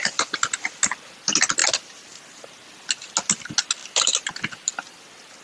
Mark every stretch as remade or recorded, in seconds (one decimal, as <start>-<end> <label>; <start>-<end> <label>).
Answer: 0.0-5.4 recorded